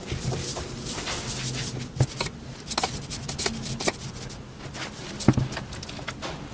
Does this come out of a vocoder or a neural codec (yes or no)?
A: no